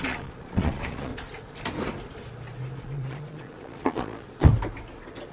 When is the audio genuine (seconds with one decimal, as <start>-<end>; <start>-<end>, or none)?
1.1-2.8; 4.5-5.3